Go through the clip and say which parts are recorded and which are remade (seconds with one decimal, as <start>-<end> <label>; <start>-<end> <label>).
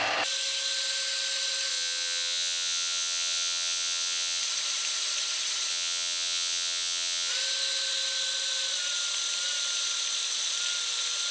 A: 0.0-1.7 recorded; 1.7-4.4 remade; 4.4-5.7 recorded; 5.7-7.3 remade; 7.3-11.3 recorded